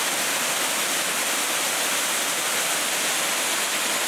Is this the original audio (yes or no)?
yes